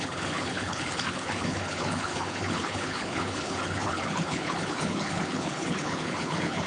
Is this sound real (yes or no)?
no